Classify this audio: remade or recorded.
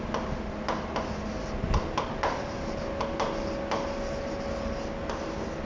recorded